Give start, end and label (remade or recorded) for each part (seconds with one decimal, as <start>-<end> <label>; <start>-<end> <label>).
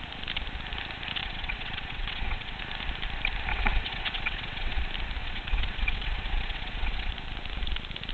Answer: 0.0-1.2 recorded; 1.2-2.6 remade; 2.6-3.5 recorded; 3.5-4.8 remade; 4.8-5.2 recorded; 5.2-7.1 remade; 7.1-8.1 recorded